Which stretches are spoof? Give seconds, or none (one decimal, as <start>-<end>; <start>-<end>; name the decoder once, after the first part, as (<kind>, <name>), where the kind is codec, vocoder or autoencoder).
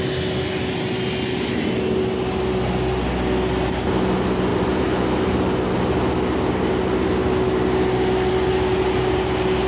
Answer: none